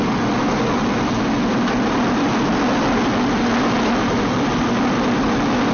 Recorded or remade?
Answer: recorded